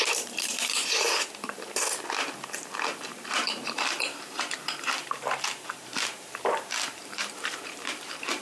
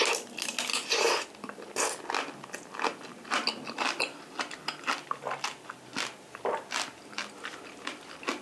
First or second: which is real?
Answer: second